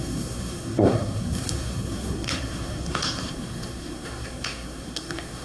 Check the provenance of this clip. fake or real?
fake